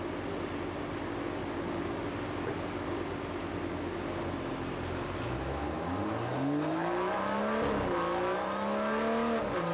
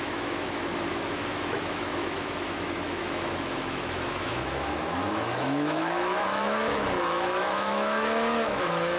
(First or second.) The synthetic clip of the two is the second